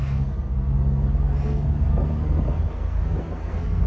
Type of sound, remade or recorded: remade